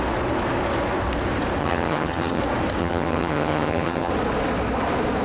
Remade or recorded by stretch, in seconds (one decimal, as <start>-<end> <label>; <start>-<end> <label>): 0.0-1.6 recorded; 1.6-2.4 remade; 2.4-2.8 recorded; 2.8-4.1 remade; 4.1-5.2 recorded